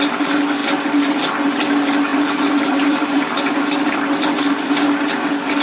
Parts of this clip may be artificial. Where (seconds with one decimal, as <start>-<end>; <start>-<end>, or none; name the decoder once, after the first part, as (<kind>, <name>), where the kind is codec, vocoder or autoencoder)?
2.1-3.4 (vocoder, BigVGAN v2)